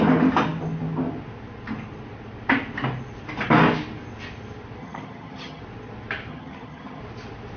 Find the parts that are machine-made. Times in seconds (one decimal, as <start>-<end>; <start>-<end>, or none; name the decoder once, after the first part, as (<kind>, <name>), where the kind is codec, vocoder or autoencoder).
4.8-5.6 (vocoder, HiFi-GAN); 6.3-7.0